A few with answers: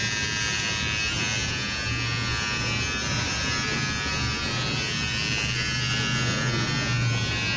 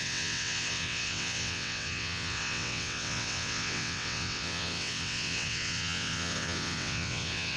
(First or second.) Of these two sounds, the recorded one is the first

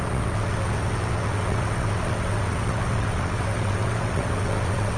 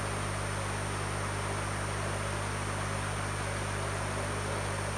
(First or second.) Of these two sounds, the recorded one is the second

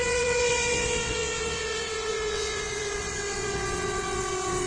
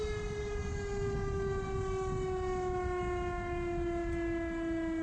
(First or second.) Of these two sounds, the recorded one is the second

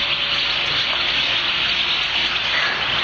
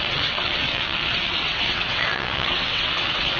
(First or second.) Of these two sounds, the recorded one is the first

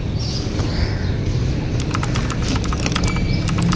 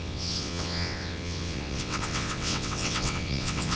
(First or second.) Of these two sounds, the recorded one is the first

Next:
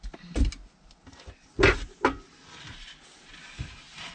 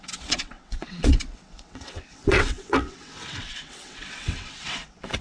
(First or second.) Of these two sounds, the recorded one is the first